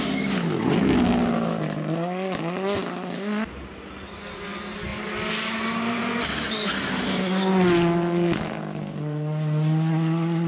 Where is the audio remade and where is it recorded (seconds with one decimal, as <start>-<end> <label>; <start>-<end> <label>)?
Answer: 0.0-4.9 recorded; 4.9-6.2 remade; 6.2-10.5 recorded